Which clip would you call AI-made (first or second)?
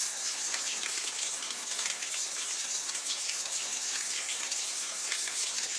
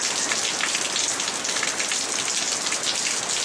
first